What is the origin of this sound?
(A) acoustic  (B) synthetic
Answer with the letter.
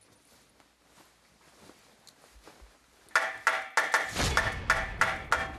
A